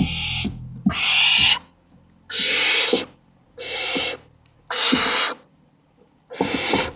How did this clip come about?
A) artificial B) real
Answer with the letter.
B